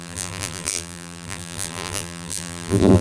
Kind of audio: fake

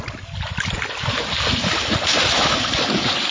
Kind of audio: real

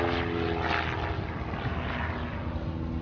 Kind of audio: real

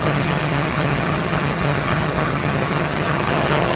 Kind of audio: fake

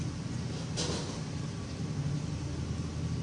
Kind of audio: real